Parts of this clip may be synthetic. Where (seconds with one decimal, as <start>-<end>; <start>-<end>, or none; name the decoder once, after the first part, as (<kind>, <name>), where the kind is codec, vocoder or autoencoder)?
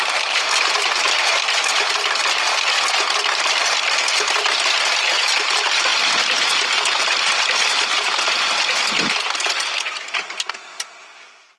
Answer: none